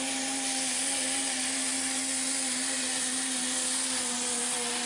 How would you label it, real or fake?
real